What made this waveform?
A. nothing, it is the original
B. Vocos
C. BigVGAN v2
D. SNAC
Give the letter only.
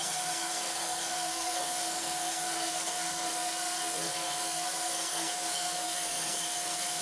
D